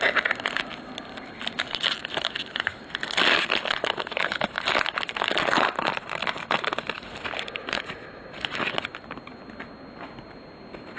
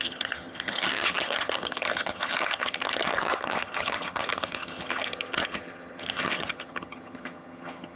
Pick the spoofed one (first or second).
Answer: second